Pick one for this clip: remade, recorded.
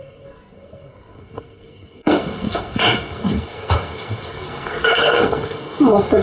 remade